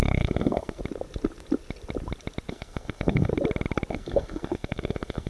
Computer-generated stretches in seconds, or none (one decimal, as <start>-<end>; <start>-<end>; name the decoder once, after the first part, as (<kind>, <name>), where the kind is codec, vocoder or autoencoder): 0.0-0.8 (codec, SNAC); 2.5-3.3; 3.9-5.3